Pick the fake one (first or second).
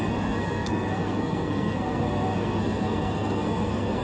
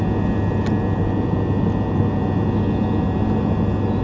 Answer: first